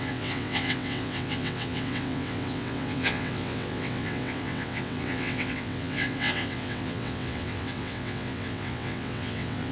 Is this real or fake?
fake